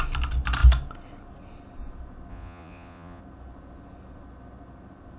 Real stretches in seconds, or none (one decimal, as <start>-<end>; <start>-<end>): 0.0-2.3; 3.2-5.2